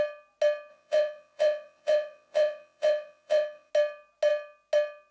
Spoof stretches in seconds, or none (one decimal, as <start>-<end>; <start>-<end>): 0.7-3.7